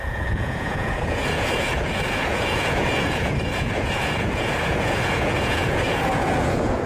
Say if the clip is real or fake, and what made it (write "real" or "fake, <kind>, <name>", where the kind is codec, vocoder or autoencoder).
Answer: fake, vocoder, Vocos